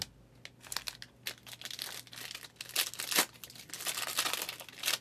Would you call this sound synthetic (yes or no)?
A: no